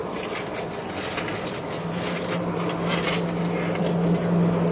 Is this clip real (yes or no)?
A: yes